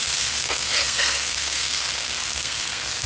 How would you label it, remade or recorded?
remade